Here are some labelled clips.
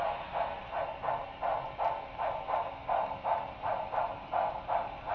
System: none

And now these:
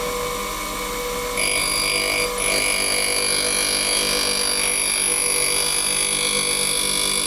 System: none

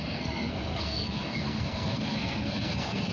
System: codec, SNAC